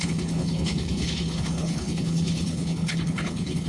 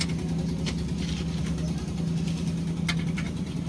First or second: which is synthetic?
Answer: first